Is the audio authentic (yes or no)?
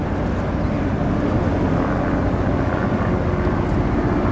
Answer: yes